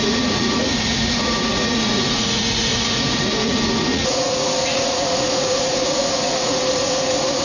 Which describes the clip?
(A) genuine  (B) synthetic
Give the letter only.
B